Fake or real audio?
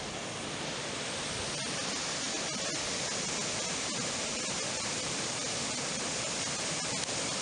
real